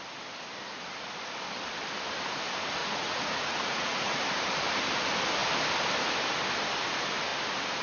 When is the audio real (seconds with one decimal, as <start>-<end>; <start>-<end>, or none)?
0.0-2.8; 4.2-7.8

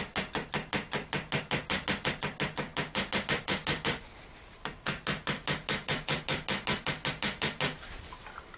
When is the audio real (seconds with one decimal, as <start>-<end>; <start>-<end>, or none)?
0.0-8.6

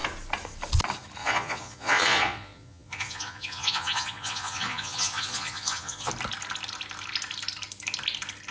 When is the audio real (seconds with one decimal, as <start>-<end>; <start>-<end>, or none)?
0.0-1.2; 6.1-8.5

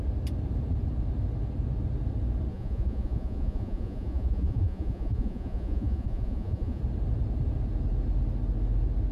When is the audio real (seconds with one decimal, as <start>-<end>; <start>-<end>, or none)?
0.0-2.5; 6.8-9.1

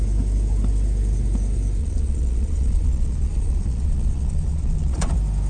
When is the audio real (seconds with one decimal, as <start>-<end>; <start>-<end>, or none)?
0.0-1.8; 5.1-5.5